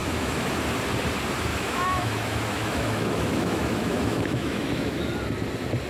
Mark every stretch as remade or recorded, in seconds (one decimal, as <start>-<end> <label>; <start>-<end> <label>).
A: 0.0-0.5 remade; 0.5-1.5 recorded; 1.5-5.0 remade; 5.0-5.9 recorded